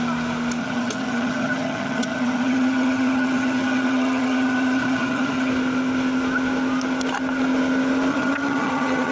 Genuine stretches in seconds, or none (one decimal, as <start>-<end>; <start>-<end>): 0.0-0.6; 5.5-8.1